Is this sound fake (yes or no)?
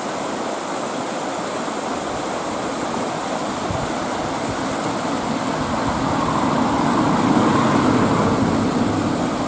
no